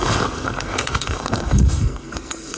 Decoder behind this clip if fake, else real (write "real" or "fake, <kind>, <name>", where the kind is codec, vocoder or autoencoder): fake, codec, SNAC